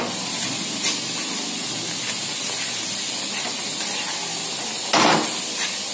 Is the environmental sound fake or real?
real